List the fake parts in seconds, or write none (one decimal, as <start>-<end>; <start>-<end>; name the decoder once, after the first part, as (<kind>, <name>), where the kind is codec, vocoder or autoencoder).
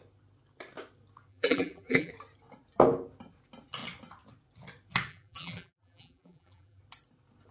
1.3-2.1 (vocoder, BigVGAN v2); 5.1-6.8